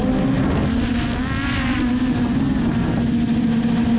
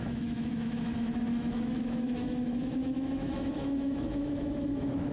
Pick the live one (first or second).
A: first